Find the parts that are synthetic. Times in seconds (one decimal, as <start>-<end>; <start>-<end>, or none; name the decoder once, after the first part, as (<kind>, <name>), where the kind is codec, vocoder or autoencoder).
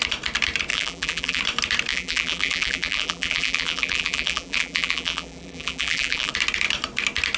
0.7-1.4 (vocoder, BigVGAN v2); 1.9-6.3